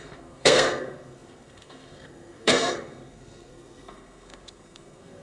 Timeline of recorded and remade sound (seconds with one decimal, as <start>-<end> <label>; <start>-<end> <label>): 0.0-5.2 remade